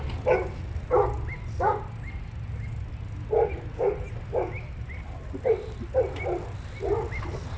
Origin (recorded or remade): recorded